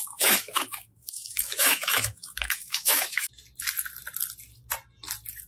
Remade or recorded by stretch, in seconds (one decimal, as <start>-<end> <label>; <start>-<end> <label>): 0.0-3.3 remade; 3.3-5.5 recorded